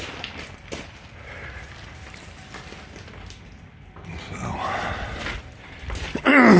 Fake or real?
fake